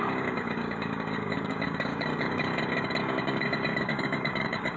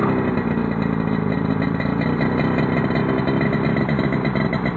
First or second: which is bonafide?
second